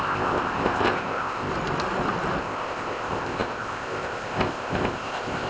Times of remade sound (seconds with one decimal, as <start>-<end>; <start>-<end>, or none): 0.0-1.5; 2.4-5.5